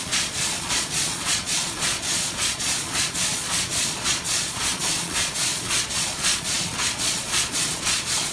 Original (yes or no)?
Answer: no